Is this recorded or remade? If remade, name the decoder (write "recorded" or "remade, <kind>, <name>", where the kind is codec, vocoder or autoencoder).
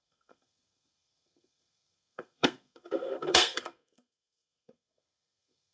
remade, codec, SNAC